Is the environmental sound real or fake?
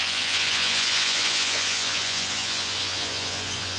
fake